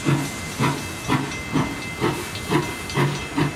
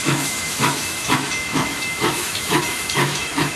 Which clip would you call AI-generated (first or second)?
second